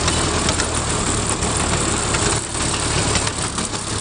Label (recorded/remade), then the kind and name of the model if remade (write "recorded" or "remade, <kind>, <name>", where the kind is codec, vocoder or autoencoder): recorded